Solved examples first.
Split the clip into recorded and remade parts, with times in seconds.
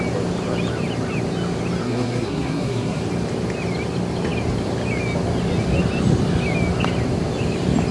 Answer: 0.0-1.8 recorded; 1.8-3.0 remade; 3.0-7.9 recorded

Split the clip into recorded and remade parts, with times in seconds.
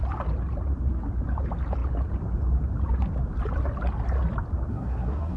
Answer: 0.0-4.7 recorded; 4.7-5.4 remade